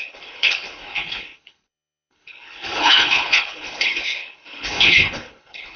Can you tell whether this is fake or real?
fake